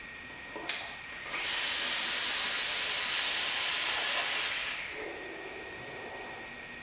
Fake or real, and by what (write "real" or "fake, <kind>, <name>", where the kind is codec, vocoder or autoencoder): real